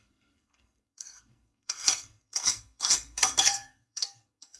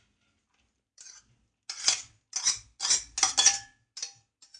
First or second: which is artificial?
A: first